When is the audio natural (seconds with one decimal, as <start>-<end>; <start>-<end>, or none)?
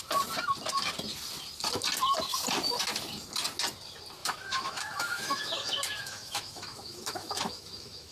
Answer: 0.0-4.2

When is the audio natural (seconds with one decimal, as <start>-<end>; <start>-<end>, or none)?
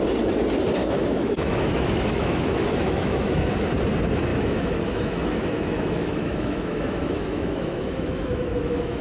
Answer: 0.0-0.8; 3.5-4.3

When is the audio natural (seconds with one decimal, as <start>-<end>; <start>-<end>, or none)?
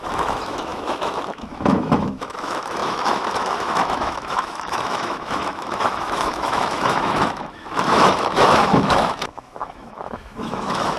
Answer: none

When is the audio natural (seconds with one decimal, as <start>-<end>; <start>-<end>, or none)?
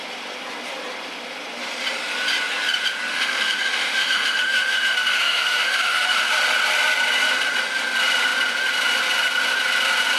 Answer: 0.0-3.1; 6.3-10.2